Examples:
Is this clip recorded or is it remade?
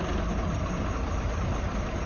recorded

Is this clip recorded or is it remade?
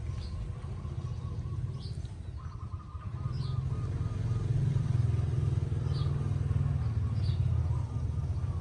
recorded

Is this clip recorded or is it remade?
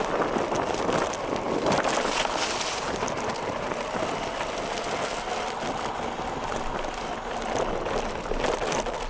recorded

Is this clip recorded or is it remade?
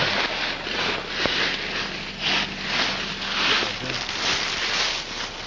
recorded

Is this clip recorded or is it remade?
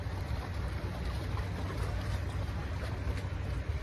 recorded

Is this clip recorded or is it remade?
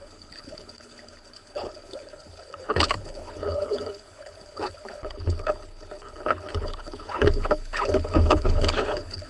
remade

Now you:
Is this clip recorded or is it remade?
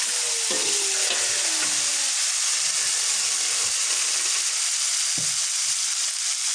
recorded